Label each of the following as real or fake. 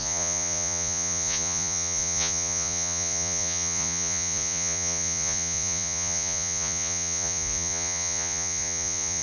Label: fake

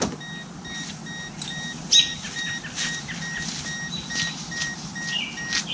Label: real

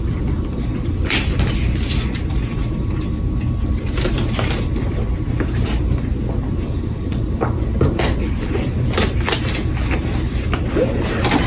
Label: real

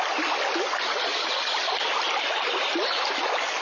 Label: real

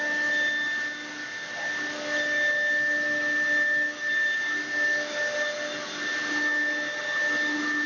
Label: real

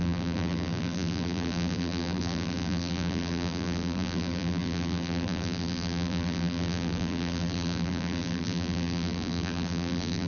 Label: fake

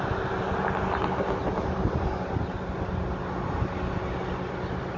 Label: real